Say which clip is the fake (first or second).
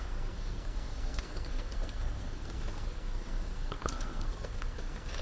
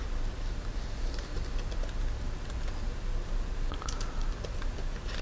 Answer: first